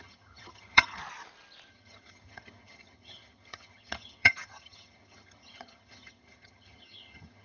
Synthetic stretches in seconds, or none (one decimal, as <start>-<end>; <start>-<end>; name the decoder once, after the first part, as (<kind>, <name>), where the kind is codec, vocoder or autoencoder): 0.0-1.0 (vocoder, HiFi-GAN); 1.7-7.4